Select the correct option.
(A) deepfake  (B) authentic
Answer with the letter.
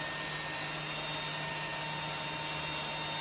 B